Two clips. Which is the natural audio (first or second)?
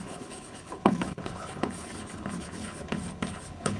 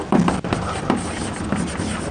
second